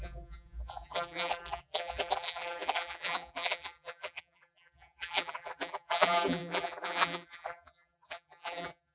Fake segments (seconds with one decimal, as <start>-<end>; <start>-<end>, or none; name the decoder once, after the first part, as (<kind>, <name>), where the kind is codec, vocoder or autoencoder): 0.0-8.9 (vocoder, BigVGAN v2)